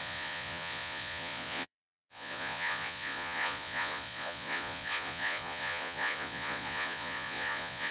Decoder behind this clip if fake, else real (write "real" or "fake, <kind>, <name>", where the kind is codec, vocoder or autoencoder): fake, vocoder, Vocos